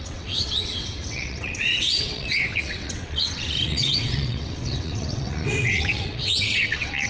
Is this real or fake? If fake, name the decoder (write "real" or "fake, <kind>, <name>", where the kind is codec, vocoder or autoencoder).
fake, vocoder, WaveNeXt